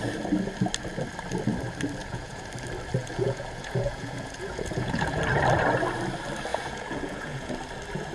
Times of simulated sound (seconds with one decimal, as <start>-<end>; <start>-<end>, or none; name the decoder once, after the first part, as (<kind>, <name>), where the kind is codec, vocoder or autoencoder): 2.0-2.5 (vocoder, Vocos); 3.0-5.2; 6.5-7.5